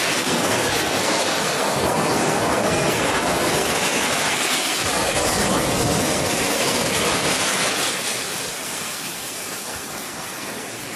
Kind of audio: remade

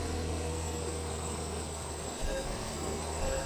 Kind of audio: remade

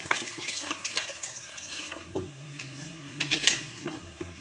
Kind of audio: remade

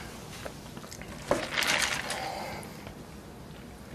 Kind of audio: recorded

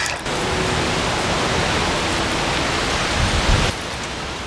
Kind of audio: recorded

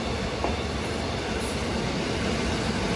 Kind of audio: recorded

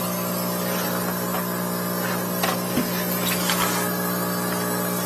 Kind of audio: recorded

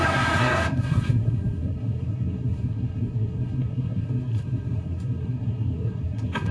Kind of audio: remade